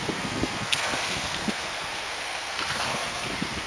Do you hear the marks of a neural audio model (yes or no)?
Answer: yes